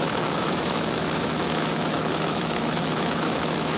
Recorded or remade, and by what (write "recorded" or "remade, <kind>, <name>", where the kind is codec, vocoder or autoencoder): remade, autoencoder, DAC-VAE